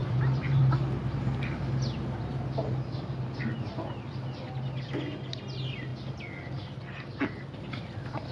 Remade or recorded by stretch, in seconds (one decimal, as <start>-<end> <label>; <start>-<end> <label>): 0.0-0.6 remade; 0.6-8.3 recorded